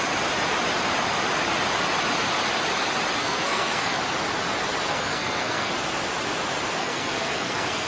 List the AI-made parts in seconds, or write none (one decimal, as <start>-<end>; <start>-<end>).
3.2-4.0; 4.9-5.7; 6.8-7.9